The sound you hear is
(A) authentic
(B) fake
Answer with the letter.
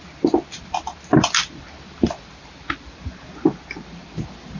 B